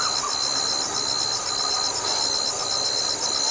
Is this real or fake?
real